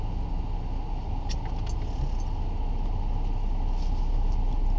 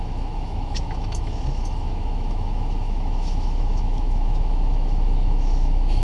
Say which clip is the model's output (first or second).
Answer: second